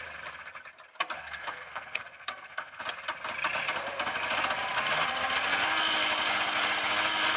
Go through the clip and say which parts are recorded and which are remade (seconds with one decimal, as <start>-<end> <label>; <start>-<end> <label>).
0.0-1.2 recorded; 1.2-2.8 remade; 2.8-7.4 recorded